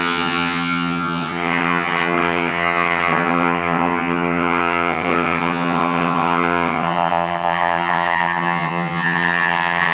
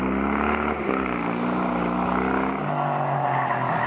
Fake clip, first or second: first